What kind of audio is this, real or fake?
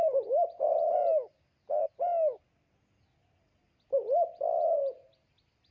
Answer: real